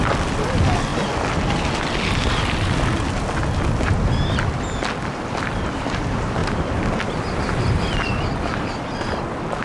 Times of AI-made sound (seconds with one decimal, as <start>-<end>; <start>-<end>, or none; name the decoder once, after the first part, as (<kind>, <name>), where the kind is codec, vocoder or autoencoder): none